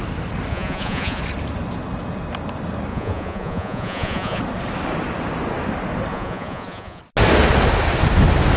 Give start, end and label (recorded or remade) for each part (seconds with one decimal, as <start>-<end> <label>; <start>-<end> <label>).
0.0-0.5 recorded; 0.5-1.2 remade; 1.2-2.9 recorded; 2.9-4.4 remade; 4.4-6.1 recorded; 6.1-7.0 remade; 7.0-8.6 recorded